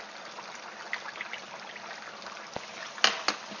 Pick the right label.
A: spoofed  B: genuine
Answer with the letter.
B